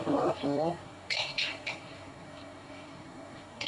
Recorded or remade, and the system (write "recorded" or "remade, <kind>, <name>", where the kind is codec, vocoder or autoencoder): remade, codec, SNAC